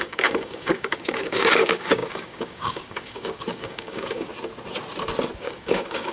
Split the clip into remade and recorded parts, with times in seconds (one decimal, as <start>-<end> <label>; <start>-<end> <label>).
0.0-4.3 remade; 4.3-5.4 recorded; 5.4-6.1 remade